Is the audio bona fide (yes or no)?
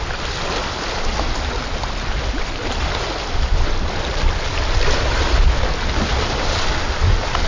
yes